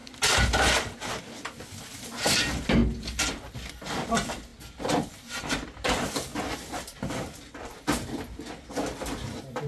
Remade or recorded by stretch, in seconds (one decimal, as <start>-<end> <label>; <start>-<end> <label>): 0.0-9.7 recorded